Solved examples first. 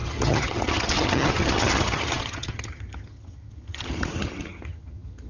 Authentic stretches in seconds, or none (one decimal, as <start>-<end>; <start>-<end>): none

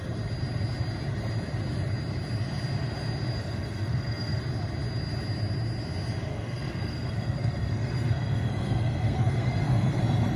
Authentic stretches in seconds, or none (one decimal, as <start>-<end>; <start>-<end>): 0.0-3.4; 4.4-6.3; 10.0-10.4

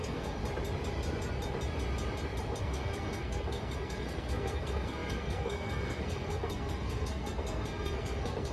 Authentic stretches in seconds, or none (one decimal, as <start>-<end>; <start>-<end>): 0.4-2.6

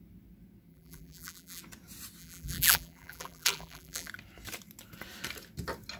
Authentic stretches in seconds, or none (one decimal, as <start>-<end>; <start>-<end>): 0.0-0.7; 1.6-2.2; 4.1-6.0

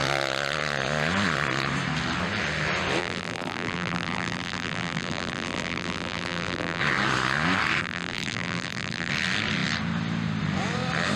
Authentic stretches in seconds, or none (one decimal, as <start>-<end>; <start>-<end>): 0.0-3.0; 6.8-7.8; 9.1-11.2

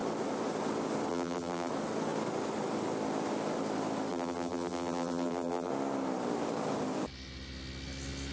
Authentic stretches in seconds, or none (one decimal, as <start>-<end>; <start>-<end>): 0.0-1.1; 1.7-4.1; 5.7-8.3

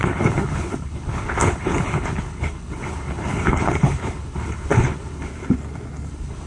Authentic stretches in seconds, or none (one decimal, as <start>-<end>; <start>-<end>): 5.3-6.1